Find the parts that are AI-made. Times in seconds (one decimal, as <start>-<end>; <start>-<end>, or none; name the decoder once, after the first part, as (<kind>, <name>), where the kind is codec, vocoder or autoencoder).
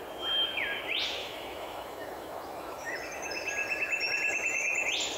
1.2-2.9 (autoencoder, DAC-VAE)